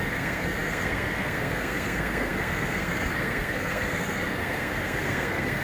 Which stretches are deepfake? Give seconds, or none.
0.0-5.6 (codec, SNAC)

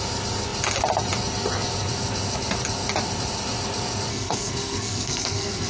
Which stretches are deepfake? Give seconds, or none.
4.1-5.7 (codec, SNAC)

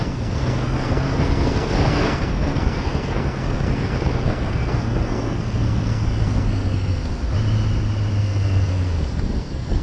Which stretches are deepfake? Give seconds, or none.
0.0-7.1 (codec, SNAC); 8.2-9.8